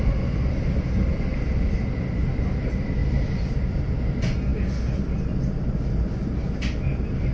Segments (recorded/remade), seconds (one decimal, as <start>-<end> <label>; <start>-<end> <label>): 0.0-3.0 recorded; 3.0-4.1 remade; 4.1-7.3 recorded